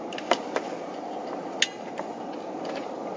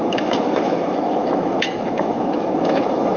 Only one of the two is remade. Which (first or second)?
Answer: second